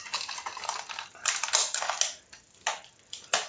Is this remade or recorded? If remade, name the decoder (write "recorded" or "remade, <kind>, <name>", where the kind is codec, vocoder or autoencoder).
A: recorded